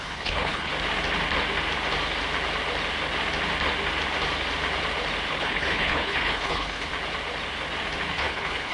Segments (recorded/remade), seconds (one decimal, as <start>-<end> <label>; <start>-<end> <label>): 0.0-0.7 remade; 0.7-5.3 recorded; 5.3-6.9 remade; 6.9-8.1 recorded; 8.1-8.7 remade